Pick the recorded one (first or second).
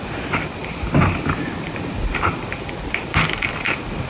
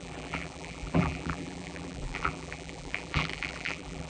first